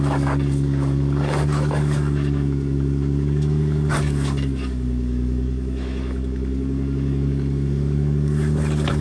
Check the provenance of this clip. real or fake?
fake